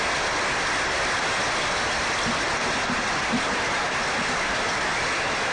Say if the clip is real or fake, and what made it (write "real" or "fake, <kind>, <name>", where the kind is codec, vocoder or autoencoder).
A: real